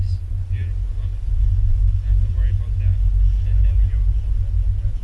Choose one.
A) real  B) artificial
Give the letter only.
A